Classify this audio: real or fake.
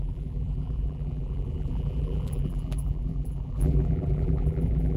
fake